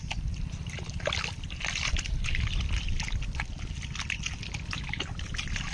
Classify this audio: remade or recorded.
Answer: recorded